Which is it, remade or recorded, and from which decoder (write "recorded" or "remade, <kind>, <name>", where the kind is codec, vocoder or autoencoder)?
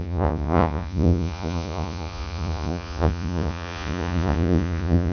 remade, vocoder, Vocos